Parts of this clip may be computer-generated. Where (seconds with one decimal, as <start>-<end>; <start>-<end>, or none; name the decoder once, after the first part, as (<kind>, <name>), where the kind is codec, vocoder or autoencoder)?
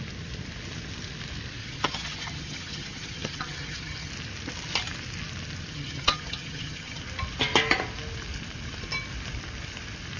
1.6-4.1 (vocoder, HiFi-GAN); 5.7-7.0